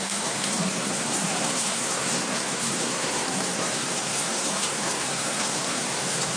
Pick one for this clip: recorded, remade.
remade